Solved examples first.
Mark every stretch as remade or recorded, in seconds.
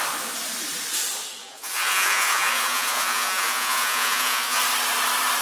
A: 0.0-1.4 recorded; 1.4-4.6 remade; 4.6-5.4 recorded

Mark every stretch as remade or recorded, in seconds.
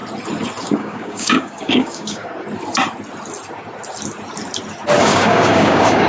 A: 0.0-0.6 recorded; 0.6-2.2 remade; 2.2-5.0 recorded; 5.0-6.1 remade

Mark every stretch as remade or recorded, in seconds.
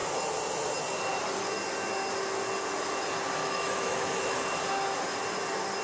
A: 0.0-3.4 recorded; 3.4-4.4 remade; 4.4-5.8 recorded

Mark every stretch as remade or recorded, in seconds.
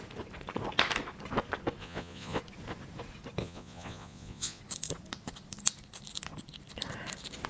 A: 0.0-1.8 recorded; 1.8-2.4 remade; 2.4-3.4 recorded; 3.4-4.6 remade; 4.6-7.5 recorded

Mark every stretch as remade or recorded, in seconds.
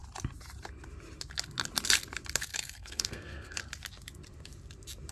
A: 0.0-2.5 recorded; 2.5-3.6 remade; 3.6-5.1 recorded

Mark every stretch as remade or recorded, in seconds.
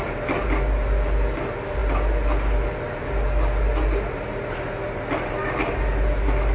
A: 0.0-6.5 recorded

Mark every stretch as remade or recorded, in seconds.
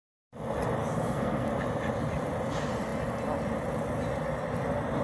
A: 0.0-0.8 recorded; 0.8-1.5 remade; 1.5-5.0 recorded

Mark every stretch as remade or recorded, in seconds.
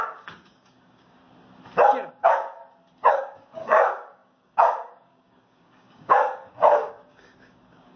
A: 0.0-1.2 remade; 1.2-2.1 recorded; 2.1-2.6 remade; 2.6-3.1 recorded; 3.1-8.0 remade